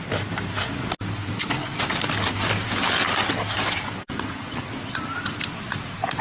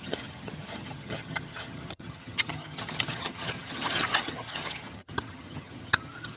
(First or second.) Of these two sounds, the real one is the first